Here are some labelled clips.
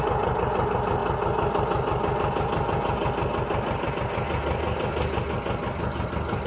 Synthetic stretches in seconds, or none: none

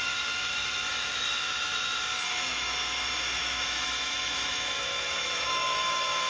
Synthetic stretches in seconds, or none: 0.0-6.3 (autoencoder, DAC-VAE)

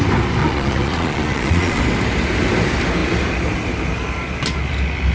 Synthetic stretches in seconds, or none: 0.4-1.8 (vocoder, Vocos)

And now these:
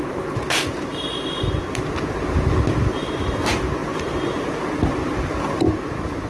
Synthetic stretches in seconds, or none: none

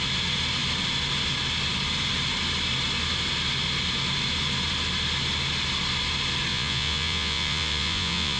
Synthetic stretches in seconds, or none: 6.5-8.4 (vocoder, Vocos)

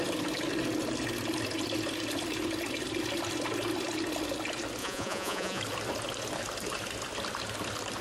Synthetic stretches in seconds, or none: 4.8-5.6 (vocoder, Vocos)